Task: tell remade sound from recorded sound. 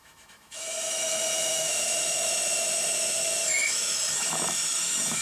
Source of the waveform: remade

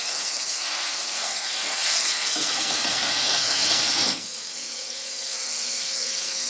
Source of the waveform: remade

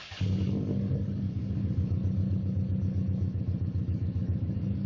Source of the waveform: remade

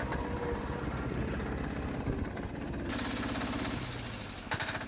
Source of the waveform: recorded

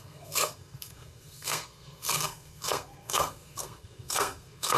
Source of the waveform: remade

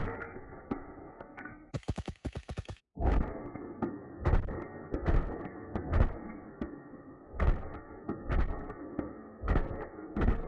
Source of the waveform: remade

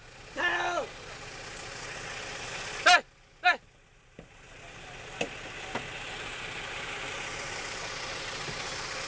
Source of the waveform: recorded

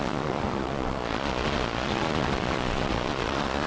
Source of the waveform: remade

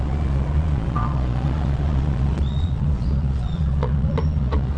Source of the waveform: remade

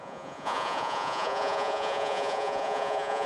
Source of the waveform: remade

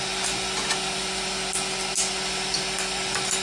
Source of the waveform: recorded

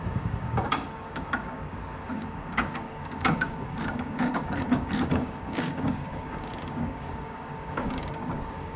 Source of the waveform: remade